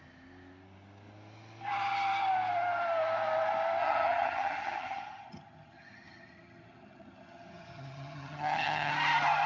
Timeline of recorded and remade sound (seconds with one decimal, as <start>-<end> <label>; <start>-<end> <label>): 0.0-3.8 recorded; 3.8-8.9 remade; 8.9-9.5 recorded